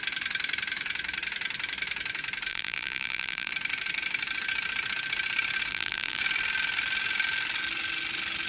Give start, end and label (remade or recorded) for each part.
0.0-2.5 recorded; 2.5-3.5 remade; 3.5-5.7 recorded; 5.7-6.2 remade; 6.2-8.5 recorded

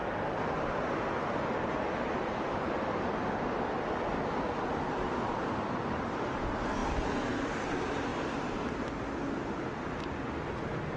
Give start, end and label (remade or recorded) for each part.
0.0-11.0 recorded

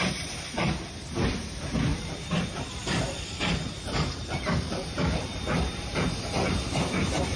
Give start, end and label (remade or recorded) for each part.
0.0-1.9 recorded; 1.9-6.0 remade; 6.0-7.4 recorded

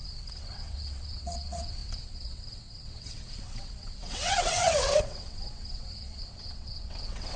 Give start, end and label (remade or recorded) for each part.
0.0-7.4 remade

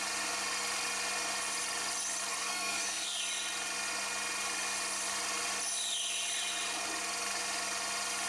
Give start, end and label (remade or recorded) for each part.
0.0-2.3 recorded; 2.3-3.2 remade; 3.2-8.3 recorded

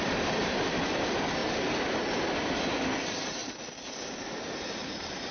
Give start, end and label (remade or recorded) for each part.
0.0-1.4 remade; 1.4-1.9 recorded; 1.9-5.3 remade